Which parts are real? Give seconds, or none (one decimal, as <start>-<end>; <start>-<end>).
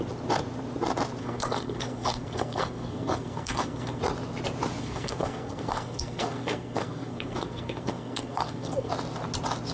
0.0-1.2; 4.0-4.8; 8.9-9.7